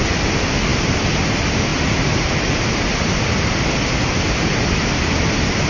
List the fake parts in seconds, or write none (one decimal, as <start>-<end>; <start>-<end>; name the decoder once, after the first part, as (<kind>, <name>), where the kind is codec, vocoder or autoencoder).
none